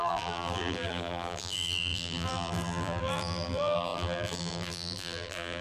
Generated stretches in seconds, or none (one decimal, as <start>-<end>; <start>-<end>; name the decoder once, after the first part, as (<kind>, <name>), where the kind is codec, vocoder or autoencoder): 0.0-5.6 (vocoder, BigVGAN v2)